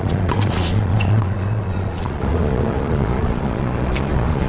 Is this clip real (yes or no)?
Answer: no